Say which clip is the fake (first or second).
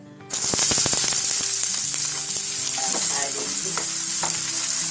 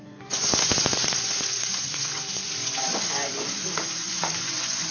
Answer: second